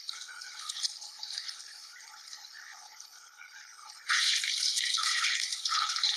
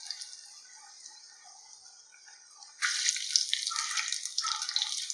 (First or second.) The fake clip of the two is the first